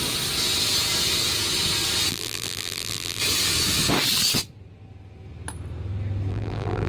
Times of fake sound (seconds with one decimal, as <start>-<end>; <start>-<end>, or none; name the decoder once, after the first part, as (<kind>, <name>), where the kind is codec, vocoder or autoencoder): 2.1-3.2 (vocoder, BigVGAN v2); 6.3-6.9